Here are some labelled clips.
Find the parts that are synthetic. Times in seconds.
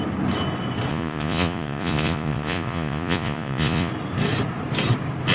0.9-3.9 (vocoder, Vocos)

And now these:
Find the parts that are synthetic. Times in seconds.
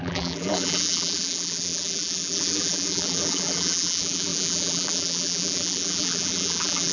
0.0-6.9 (vocoder, BigVGAN v2)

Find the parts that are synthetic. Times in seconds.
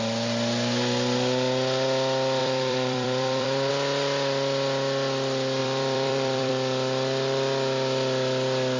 2.4-3.7 (vocoder, BigVGAN v2); 5.6-6.5